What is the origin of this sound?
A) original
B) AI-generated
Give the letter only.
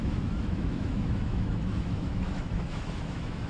B